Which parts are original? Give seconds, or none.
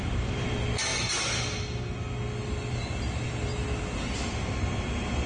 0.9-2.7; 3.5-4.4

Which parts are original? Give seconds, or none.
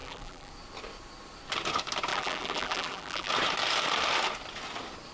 0.5-2.1; 3.3-5.1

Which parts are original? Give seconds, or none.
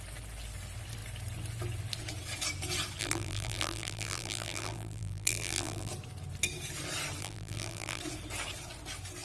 0.0-3.0; 5.9-7.2; 8.0-9.2